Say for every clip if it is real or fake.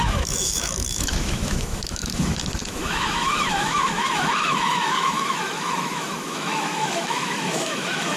fake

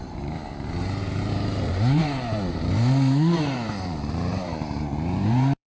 fake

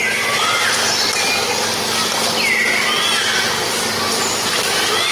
real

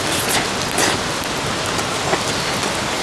real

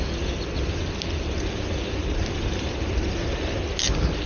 real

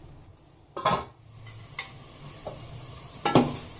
real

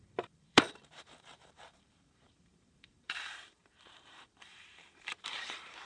fake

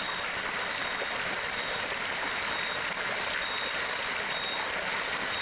real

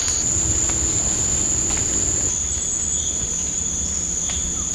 real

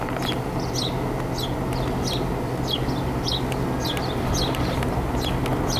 real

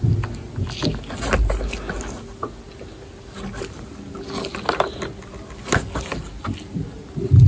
real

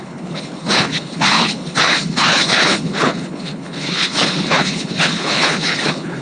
fake